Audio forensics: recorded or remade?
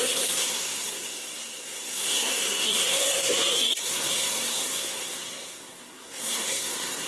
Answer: remade